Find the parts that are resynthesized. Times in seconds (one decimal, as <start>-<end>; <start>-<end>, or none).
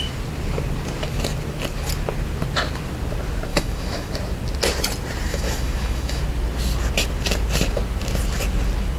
3.5-4.1; 5.3-6.2